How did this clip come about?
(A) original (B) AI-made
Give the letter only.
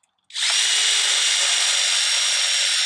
A